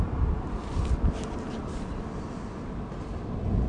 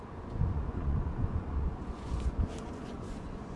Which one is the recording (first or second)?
first